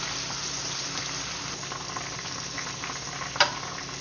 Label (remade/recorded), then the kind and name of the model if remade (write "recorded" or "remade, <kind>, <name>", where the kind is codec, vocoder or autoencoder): recorded